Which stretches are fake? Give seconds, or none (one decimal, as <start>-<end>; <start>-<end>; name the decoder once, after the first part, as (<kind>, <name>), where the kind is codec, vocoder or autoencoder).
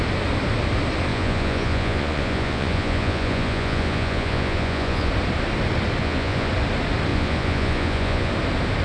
1.1-5.1 (vocoder, Vocos); 6.0-6.5; 7.1-8.3